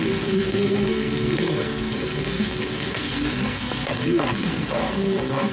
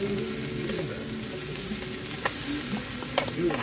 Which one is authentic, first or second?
second